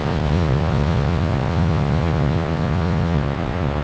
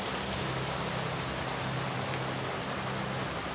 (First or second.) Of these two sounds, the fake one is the first